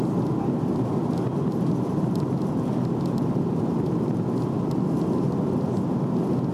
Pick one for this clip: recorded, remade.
recorded